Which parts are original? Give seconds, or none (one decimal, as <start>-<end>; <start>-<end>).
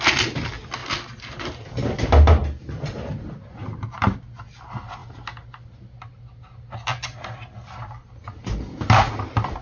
0.0-9.6